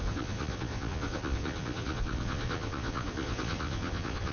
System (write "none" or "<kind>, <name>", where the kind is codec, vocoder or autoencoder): vocoder, Vocos